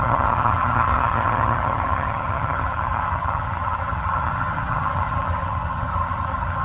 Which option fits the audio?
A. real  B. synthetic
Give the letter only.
B